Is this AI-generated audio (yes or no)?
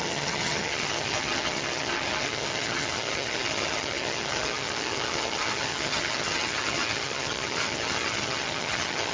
yes